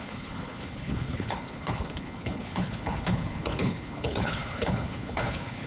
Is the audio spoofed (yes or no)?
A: yes